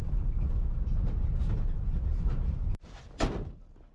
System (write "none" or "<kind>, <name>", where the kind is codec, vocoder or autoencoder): none